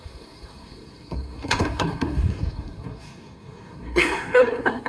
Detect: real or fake fake